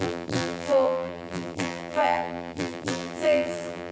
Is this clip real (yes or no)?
no